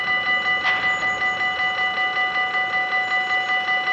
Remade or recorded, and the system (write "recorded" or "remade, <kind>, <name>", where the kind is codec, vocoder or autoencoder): recorded